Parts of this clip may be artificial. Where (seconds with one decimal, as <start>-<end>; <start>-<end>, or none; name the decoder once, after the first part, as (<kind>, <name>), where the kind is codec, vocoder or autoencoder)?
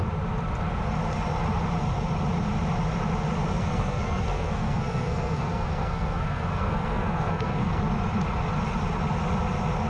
3.5-7.8 (codec, SNAC)